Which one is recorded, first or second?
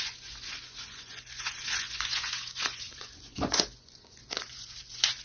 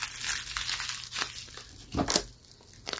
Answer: second